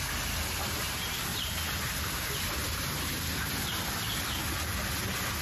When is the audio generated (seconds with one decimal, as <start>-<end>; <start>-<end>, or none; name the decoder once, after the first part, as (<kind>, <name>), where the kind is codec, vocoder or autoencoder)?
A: 1.3-3.9 (vocoder, BigVGAN v2)